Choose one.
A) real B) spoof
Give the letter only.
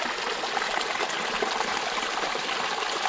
A